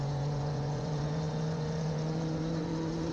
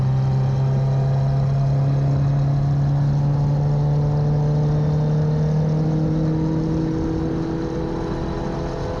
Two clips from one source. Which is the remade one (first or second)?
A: first